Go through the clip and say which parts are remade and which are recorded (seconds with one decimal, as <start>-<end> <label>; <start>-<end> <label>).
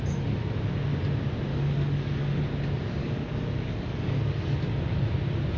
0.0-1.5 recorded; 1.5-2.4 remade; 2.4-3.0 recorded; 3.0-4.3 remade; 4.3-5.6 recorded